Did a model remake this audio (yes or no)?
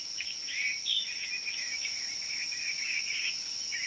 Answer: yes